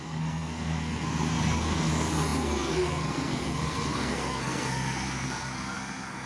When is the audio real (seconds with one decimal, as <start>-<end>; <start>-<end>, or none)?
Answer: none